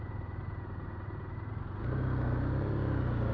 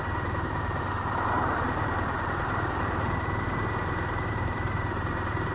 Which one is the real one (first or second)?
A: first